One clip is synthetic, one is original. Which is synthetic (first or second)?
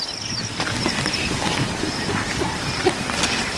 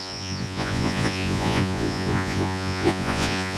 second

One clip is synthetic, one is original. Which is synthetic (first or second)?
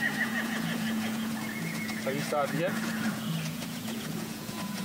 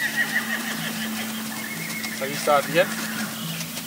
first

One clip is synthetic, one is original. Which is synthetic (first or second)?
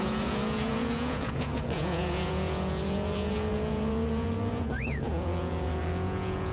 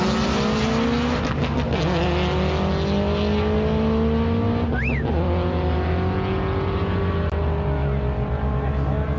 first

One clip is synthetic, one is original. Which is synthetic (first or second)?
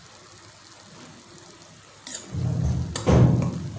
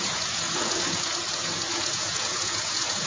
second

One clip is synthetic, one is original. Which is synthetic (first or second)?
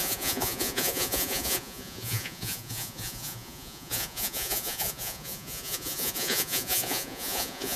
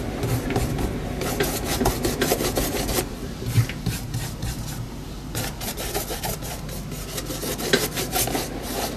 first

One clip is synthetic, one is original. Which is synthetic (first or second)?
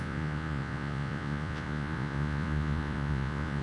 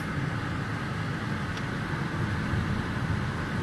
first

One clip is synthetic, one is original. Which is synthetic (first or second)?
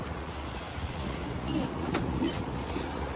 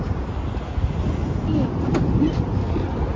first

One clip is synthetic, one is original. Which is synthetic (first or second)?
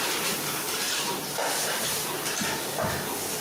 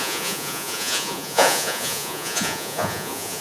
second